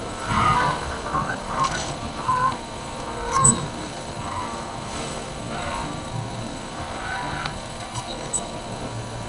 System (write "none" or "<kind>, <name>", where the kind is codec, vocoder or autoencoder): codec, SNAC